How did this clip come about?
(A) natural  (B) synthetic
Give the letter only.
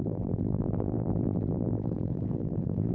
B